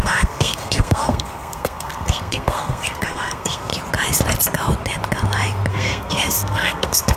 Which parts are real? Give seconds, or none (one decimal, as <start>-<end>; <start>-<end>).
3.7-5.7